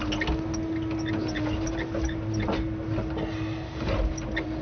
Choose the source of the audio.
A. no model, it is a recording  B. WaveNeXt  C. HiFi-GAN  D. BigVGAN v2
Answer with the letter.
A